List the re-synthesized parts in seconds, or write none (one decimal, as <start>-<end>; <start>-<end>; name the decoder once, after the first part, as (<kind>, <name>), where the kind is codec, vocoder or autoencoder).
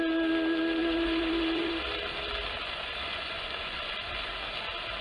0.8-1.8 (vocoder, Vocos); 2.6-4.3